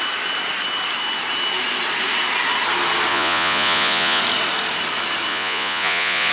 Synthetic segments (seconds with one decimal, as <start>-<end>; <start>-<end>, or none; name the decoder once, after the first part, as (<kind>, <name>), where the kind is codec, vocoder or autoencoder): 3.1-4.2 (vocoder, Vocos); 5.3-6.3